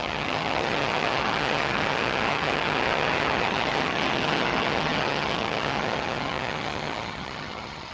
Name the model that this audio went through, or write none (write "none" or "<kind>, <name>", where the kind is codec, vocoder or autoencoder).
vocoder, HiFi-GAN